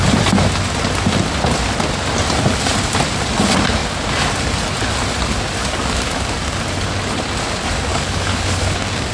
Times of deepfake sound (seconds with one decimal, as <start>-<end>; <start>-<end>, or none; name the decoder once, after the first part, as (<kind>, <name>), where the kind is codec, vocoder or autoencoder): 5.6-6.6 (codec, DAC); 7.9-9.1